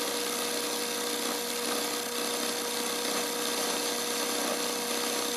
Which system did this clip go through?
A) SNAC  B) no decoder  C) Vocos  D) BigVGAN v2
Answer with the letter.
B